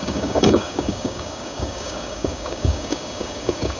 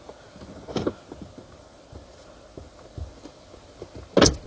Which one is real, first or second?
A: second